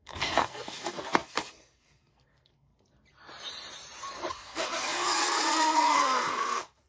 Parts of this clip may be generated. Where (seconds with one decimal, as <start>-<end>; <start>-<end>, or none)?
0.0-2.7; 4.3-6.9